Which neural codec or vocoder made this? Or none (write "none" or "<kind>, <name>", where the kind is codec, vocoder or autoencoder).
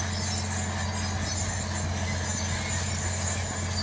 none